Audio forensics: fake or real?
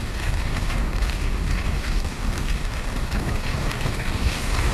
fake